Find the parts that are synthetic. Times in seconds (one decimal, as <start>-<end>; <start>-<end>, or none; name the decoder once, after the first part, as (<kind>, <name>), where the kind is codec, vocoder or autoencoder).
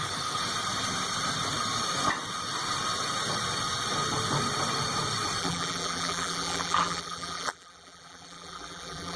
5.4-9.2 (vocoder, BigVGAN v2)